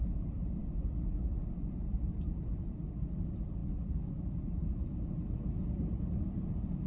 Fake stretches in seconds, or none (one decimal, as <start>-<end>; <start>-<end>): none

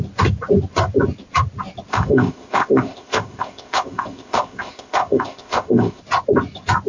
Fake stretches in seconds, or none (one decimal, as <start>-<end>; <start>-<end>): 1.9-6.0

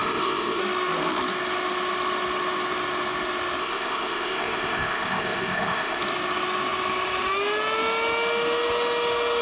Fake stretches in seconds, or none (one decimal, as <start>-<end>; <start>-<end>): 0.0-0.6; 3.6-6.0

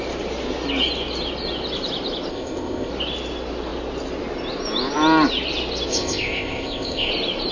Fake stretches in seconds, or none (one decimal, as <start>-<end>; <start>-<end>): 2.3-2.9; 5.9-7.1

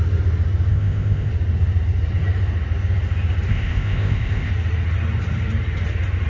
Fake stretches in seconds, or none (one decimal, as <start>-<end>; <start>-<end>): 0.7-1.3; 3.5-4.5